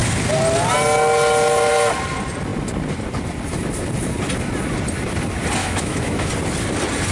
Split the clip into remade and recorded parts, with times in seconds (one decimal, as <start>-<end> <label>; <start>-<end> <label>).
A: 0.0-5.6 recorded; 5.6-6.3 remade; 6.3-7.1 recorded

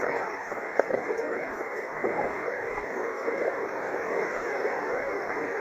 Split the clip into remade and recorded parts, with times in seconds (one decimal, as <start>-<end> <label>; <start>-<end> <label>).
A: 0.0-5.6 remade